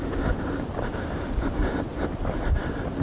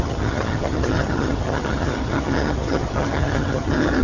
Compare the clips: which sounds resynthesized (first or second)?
second